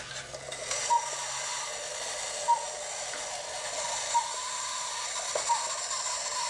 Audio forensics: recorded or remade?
recorded